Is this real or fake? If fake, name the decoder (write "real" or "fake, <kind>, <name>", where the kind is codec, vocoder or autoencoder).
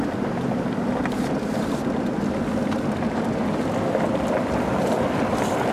real